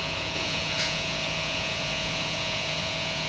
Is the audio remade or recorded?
remade